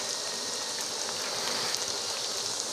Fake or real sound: real